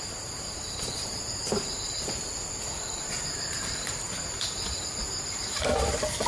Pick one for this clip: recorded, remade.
remade